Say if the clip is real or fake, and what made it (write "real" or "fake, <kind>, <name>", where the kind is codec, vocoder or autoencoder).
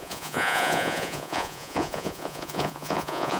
fake, vocoder, Vocos